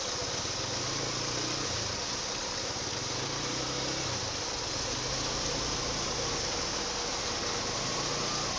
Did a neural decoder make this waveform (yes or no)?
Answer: no